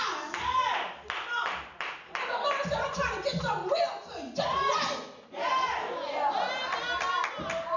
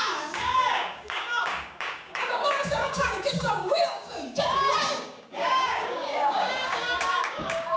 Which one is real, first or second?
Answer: first